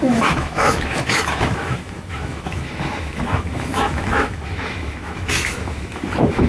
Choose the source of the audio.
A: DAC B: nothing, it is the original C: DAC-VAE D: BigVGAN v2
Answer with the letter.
C